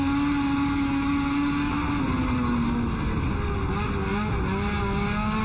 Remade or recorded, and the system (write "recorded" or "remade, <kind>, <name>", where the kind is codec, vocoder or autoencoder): recorded